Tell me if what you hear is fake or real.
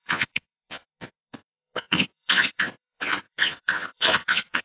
fake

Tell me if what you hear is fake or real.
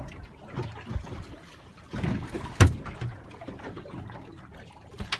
real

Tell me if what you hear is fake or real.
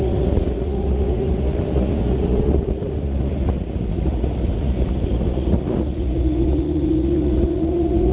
fake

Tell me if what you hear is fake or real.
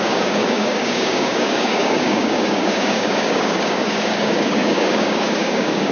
fake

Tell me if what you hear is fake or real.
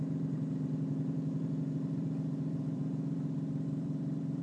fake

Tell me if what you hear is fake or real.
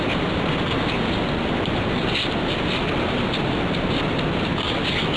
real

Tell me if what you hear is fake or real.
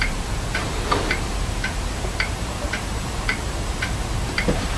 fake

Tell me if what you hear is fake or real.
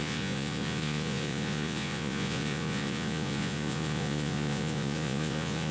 fake